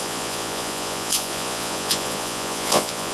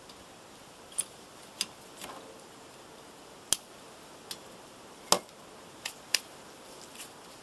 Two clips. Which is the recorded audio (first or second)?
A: second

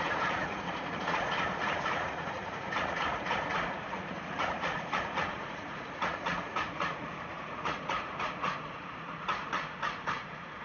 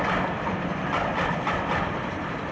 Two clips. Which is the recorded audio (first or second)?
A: second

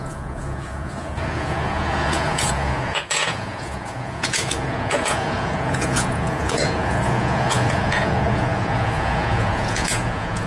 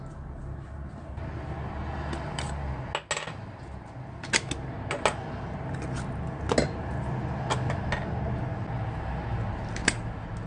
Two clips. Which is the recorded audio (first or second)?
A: second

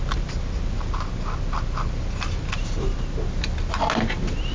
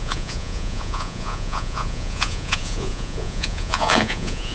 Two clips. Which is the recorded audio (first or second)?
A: first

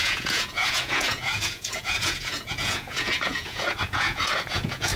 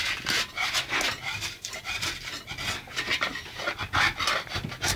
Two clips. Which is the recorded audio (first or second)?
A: second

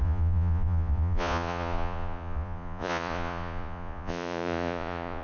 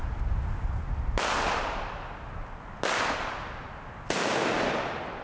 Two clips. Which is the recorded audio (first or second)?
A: second